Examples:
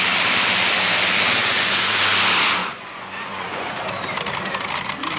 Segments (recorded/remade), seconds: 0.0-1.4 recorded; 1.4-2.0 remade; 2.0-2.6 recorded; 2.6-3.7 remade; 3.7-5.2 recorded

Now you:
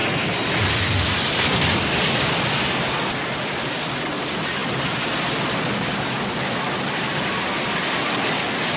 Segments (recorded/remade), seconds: 0.0-8.8 recorded

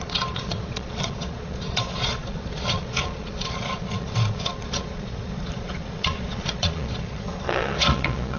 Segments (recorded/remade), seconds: 0.0-8.4 remade

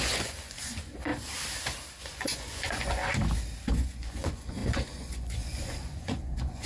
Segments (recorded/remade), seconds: 0.0-1.1 remade; 1.1-2.0 recorded; 2.0-3.0 remade; 3.0-3.7 recorded; 3.7-6.7 remade

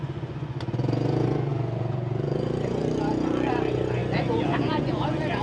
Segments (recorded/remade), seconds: 0.0-5.4 remade